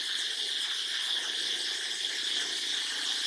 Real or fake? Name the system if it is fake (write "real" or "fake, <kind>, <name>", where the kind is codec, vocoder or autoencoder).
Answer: real